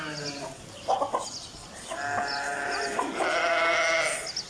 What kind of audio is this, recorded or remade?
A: recorded